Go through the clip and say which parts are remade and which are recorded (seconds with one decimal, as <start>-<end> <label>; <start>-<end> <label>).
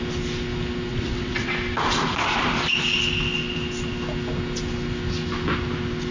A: 0.0-0.9 recorded; 0.9-1.5 remade; 1.5-6.1 recorded